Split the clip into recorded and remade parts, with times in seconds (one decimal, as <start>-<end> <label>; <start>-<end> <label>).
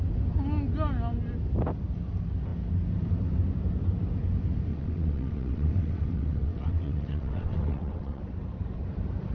0.0-4.7 recorded; 4.7-8.2 remade; 8.2-9.3 recorded